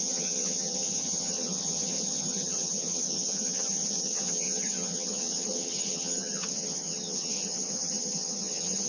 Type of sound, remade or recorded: remade